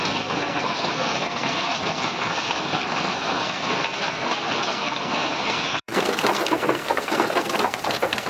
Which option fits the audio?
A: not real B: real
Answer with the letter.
A